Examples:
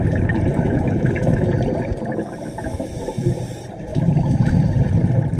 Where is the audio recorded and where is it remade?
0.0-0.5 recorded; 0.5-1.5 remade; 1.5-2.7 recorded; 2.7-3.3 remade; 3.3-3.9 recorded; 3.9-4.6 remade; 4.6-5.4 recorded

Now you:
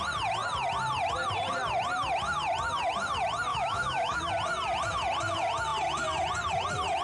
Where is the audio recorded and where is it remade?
0.0-3.5 recorded; 3.5-4.3 remade; 4.3-7.0 recorded

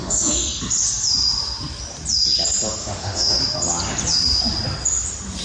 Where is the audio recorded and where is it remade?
0.0-0.6 remade; 0.6-2.8 recorded; 2.8-3.4 remade; 3.4-5.4 recorded

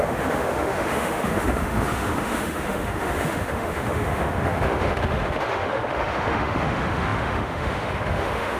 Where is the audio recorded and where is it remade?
0.0-8.6 remade